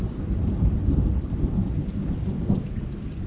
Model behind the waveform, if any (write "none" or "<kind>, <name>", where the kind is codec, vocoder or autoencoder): none